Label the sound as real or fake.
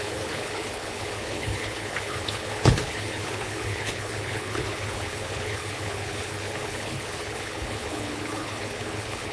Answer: fake